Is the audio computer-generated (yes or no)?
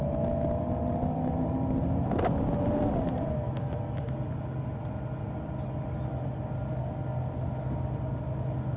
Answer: no